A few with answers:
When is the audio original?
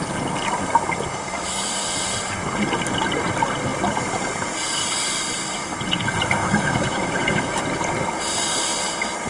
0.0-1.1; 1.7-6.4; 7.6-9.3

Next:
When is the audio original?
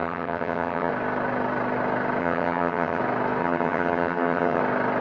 0.9-2.2; 3.0-3.4; 4.6-5.0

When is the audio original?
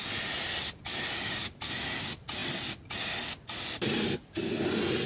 0.0-5.1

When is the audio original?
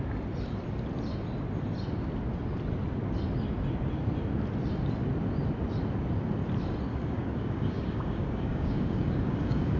0.0-6.9